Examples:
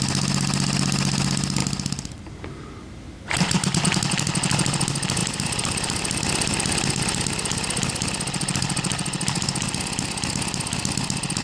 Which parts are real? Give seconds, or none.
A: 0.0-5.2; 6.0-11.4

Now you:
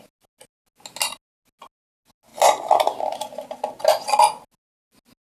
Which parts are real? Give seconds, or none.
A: 0.0-5.2

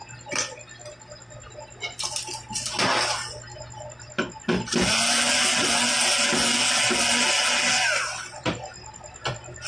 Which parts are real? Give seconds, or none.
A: 0.0-9.7

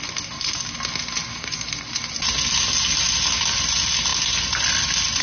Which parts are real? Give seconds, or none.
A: 0.0-5.2

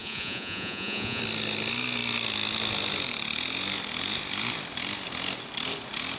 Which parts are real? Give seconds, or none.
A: 1.2-6.2